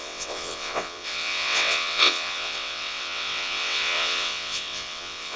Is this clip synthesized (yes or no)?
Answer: yes